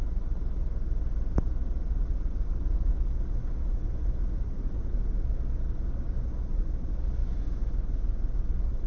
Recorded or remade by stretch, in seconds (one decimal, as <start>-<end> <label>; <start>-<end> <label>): 0.0-7.2 recorded; 7.2-7.7 remade; 7.7-8.9 recorded